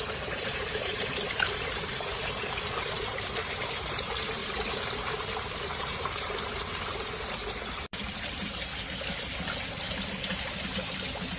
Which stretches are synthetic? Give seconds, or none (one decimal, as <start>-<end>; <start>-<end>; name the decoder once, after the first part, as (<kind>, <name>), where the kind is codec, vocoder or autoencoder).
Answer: 0.0-4.4 (vocoder, BigVGAN v2); 5.8-8.7

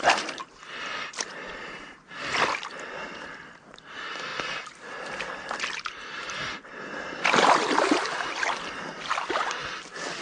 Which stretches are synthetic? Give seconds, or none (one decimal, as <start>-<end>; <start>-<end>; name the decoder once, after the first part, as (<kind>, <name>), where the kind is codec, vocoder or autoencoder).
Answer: 0.0-4.3 (vocoder, BigVGAN v2); 8.8-10.2

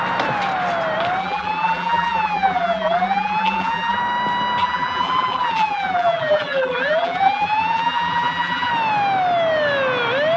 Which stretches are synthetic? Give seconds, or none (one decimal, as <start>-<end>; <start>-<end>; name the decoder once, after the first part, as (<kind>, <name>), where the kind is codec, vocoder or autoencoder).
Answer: 1.2-4.0 (vocoder, BigVGAN v2); 4.6-8.7

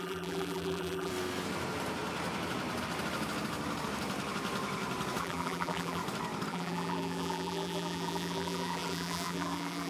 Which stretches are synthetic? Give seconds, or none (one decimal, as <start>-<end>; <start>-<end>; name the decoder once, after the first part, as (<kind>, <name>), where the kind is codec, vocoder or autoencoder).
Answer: 0.0-1.1 (vocoder, BigVGAN v2); 5.2-6.0; 6.5-9.9